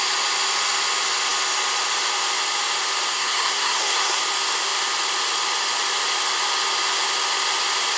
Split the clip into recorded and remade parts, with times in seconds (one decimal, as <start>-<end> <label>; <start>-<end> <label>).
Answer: 0.0-3.1 recorded; 3.1-4.2 remade; 4.2-8.0 recorded